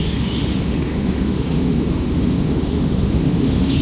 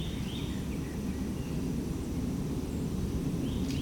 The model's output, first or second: first